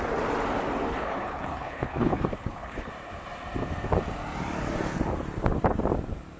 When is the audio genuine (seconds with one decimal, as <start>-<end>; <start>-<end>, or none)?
0.0-0.9; 2.9-6.4